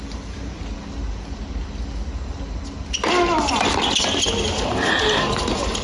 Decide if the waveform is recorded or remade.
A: recorded